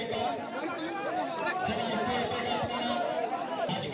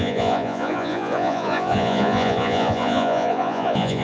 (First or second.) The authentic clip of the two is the first